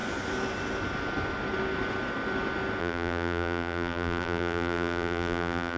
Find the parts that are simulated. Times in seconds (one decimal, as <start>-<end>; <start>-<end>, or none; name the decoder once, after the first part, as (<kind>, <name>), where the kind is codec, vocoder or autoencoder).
2.8-5.8 (vocoder, BigVGAN v2)